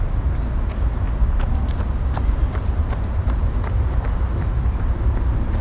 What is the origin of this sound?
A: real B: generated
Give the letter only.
A